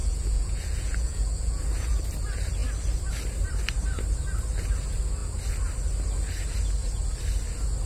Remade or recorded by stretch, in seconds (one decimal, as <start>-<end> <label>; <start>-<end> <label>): 0.0-2.0 remade; 2.0-7.9 recorded